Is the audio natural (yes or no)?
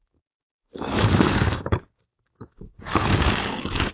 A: no